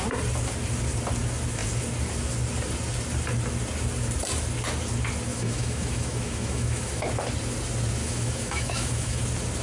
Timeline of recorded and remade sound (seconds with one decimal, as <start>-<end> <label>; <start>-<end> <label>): 0.0-5.3 recorded; 5.3-7.0 remade; 7.0-8.0 recorded; 8.0-9.2 remade; 9.2-9.6 recorded